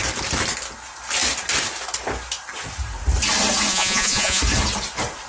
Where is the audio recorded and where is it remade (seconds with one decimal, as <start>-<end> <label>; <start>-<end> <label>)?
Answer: 0.0-3.7 recorded; 3.7-4.4 remade; 4.4-5.3 recorded